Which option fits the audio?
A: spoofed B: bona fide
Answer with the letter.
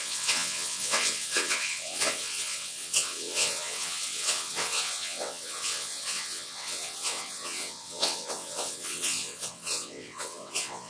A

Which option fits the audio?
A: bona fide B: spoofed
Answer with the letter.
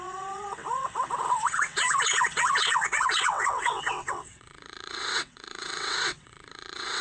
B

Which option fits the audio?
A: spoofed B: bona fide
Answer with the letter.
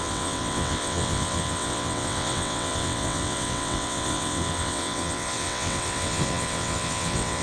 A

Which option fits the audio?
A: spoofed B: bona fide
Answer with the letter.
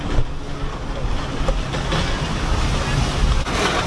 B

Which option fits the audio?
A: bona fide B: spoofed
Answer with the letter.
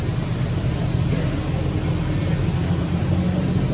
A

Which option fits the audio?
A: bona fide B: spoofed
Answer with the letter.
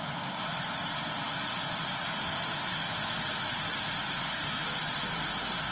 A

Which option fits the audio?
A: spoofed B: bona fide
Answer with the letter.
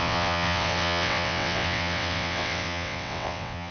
A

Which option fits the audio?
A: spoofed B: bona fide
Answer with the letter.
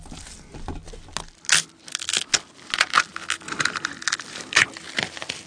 B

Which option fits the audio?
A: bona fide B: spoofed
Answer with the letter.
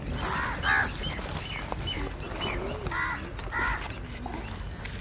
A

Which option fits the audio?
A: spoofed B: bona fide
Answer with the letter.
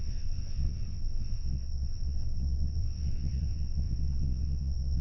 A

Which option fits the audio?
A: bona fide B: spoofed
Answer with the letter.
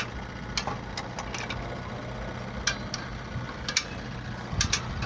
A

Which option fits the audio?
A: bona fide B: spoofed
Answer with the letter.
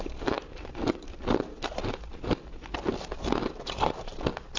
A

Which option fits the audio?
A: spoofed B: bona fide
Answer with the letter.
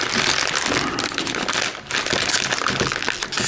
B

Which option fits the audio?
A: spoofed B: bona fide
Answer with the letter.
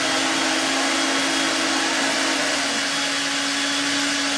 B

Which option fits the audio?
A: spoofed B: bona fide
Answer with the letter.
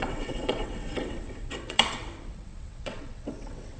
A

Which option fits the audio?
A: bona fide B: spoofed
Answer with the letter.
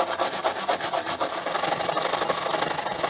A